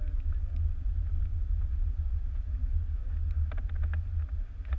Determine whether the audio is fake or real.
real